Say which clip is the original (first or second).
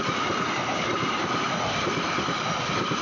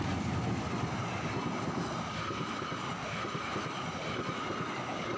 second